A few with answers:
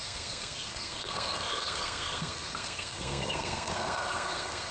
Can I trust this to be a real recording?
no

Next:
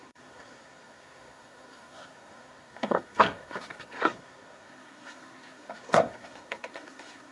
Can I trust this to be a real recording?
no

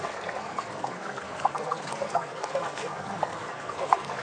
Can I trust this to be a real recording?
no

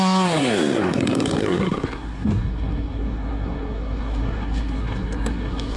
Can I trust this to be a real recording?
no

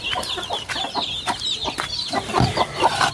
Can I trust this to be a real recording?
yes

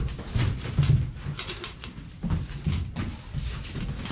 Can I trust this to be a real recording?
yes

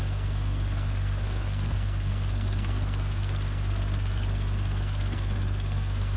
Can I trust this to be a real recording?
no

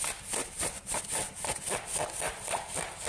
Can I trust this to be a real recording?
yes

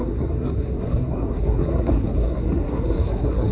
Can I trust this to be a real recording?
no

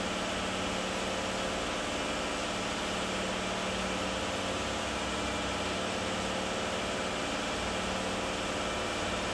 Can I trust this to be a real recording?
yes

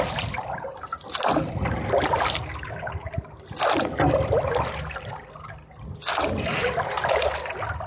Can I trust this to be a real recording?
yes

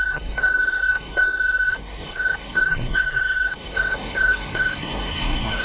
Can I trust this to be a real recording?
no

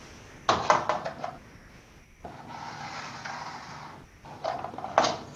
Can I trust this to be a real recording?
yes